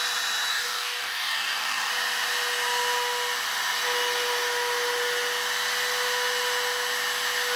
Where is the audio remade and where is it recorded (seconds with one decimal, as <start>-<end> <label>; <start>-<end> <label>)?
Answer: 0.0-0.5 recorded; 0.5-1.9 remade; 1.9-7.6 recorded